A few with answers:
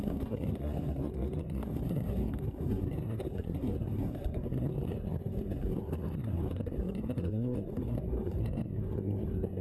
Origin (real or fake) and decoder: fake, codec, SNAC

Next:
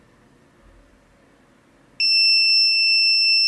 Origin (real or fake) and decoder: real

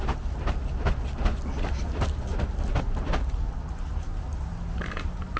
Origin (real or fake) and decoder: real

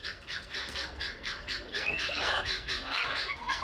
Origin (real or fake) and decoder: fake, codec, SNAC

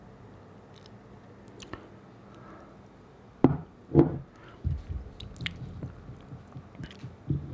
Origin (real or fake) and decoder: real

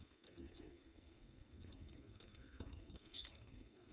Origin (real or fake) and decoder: fake, codec, SNAC